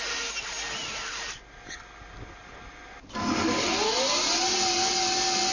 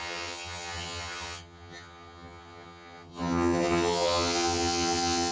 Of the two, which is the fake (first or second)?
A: second